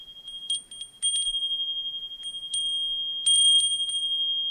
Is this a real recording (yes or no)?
yes